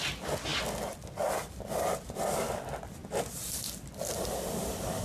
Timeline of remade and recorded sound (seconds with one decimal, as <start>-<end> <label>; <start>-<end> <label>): 0.0-0.5 remade; 0.5-2.1 recorded; 2.1-3.0 remade; 3.0-4.1 recorded; 4.1-5.0 remade